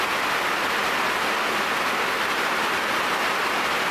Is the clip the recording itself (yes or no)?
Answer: yes